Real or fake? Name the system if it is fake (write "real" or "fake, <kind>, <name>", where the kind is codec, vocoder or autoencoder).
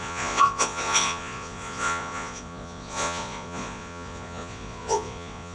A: fake, vocoder, Vocos